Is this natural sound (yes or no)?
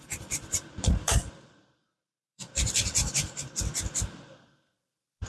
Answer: no